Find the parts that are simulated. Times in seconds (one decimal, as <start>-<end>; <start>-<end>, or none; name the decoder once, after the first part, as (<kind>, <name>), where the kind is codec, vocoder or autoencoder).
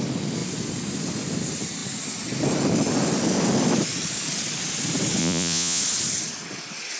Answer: 5.2-5.8 (vocoder, Vocos)